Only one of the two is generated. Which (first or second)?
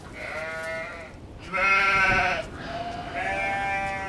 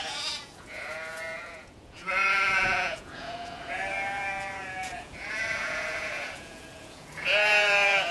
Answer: second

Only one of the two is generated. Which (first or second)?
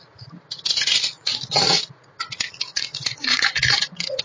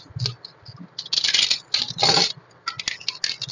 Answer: first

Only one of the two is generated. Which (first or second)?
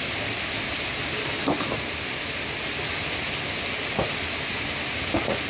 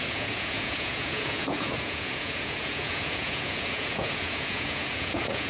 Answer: second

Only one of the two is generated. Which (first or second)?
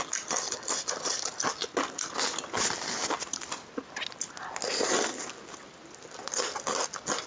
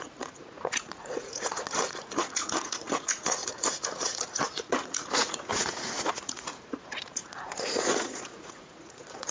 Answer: second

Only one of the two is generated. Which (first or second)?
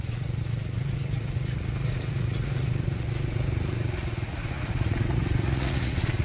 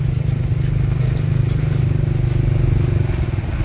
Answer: first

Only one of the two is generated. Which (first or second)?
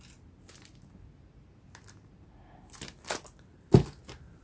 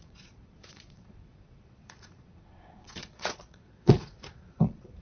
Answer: second